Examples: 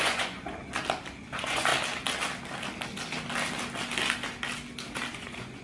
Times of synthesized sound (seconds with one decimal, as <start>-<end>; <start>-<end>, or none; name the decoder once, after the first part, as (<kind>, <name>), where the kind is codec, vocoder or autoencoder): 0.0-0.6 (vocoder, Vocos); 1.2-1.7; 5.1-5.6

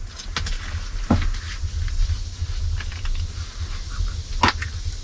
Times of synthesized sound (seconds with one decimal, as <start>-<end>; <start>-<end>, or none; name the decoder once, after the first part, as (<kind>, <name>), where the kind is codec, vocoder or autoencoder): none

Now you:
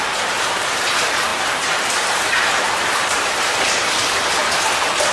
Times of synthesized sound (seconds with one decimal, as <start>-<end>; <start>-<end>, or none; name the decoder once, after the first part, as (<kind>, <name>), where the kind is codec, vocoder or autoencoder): 0.0-4.4 (vocoder, BigVGAN v2)

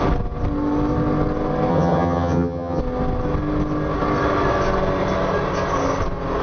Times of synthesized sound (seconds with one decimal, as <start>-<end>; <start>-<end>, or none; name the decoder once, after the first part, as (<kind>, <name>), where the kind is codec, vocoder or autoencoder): 1.7-2.8 (vocoder, HiFi-GAN)

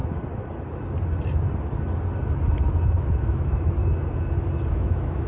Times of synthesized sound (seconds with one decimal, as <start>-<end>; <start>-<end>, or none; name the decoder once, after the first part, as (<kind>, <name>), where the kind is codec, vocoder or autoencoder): 3.2-3.8 (autoencoder, DAC-VAE); 4.7-5.3